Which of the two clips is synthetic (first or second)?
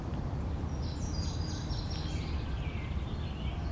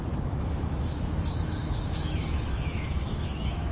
second